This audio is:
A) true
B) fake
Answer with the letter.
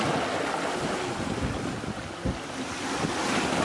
A